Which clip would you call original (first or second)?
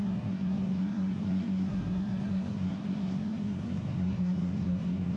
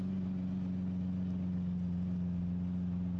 second